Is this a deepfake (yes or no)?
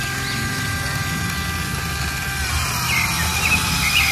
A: no